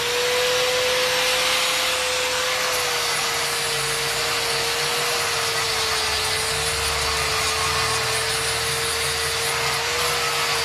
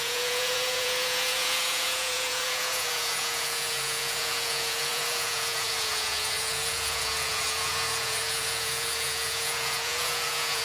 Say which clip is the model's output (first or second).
second